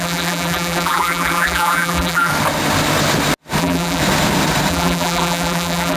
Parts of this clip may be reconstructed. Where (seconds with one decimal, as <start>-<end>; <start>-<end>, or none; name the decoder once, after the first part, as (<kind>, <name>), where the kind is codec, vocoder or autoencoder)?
0.0-2.3 (vocoder, BigVGAN v2); 3.6-4.0; 4.7-6.0